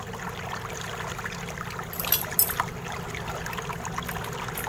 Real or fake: real